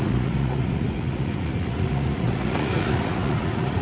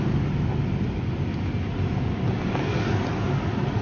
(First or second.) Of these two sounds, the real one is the second